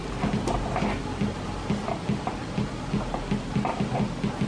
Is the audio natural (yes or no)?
yes